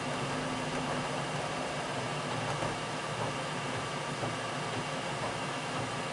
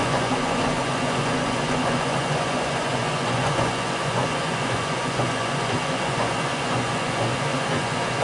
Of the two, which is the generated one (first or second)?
second